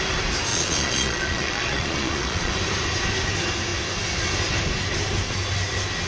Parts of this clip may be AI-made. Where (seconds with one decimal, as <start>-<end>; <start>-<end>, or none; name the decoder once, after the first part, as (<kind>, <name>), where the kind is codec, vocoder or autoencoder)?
0.5-2.5 (vocoder, Vocos)